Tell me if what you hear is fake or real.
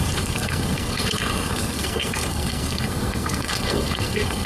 fake